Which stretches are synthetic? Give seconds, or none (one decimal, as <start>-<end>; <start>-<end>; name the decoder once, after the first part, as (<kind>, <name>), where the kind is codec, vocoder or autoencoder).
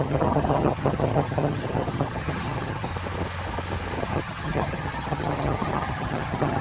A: 0.0-2.9 (vocoder, HiFi-GAN); 4.0-6.6